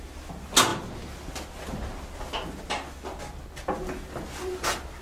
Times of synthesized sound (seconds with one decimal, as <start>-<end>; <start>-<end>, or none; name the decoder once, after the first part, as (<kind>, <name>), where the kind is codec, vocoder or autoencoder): none